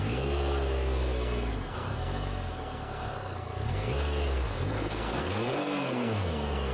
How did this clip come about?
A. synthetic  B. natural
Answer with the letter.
A